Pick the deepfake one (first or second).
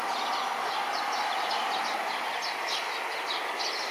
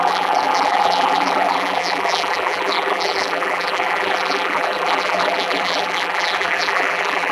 second